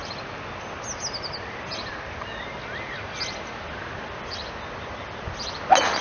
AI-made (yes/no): no